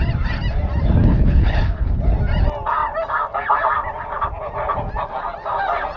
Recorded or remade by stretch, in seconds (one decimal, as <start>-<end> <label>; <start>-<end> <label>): 0.0-1.0 recorded; 1.0-2.0 remade; 2.0-6.0 recorded